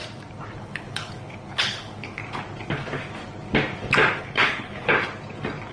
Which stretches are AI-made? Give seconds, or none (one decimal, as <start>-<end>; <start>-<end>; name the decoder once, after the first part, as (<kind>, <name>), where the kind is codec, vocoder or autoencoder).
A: 0.6-2.2 (codec, HILCodec); 4.2-4.9